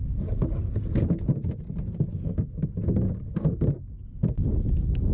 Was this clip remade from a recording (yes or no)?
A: no